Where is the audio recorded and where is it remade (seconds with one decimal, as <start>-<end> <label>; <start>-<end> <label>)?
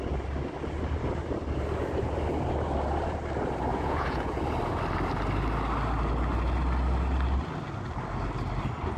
0.0-3.7 recorded; 3.7-4.4 remade; 4.4-9.0 recorded